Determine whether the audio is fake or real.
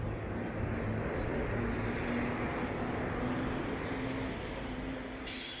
real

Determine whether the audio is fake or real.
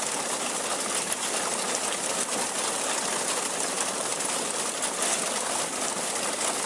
real